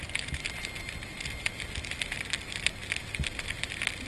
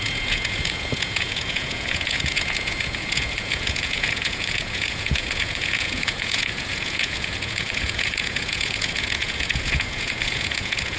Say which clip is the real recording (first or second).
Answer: first